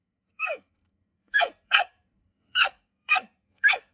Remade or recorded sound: remade